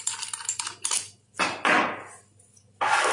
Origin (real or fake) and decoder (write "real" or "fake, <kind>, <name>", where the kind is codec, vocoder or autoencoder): real